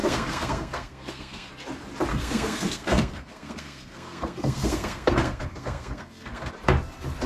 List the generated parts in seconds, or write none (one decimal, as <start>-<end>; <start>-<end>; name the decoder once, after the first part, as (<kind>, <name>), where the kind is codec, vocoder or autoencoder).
0.0-1.5 (codec, SNAC); 2.1-6.5

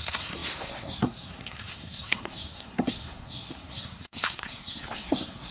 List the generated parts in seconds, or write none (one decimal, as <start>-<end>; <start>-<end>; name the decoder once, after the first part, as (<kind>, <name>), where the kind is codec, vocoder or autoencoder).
0.0-5.5 (codec, SNAC)

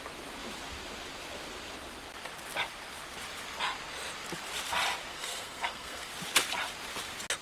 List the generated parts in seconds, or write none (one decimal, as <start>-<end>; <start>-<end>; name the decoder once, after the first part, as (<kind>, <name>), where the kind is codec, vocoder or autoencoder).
5.1-6.1 (codec, SNAC)

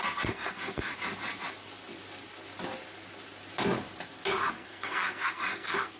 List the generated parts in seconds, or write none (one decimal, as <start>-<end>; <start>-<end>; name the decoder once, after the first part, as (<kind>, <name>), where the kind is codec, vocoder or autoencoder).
0.0-0.9 (codec, SNAC); 4.5-6.0

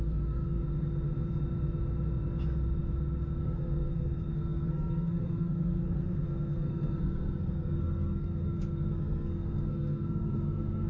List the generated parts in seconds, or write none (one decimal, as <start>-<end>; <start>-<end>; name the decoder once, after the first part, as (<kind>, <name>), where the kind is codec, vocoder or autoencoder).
0.0-0.6 (codec, SNAC); 3.4-10.9

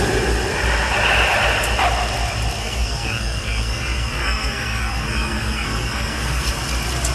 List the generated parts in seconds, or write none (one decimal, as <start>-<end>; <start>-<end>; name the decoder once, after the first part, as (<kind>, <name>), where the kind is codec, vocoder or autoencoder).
2.6-6.5 (codec, SNAC)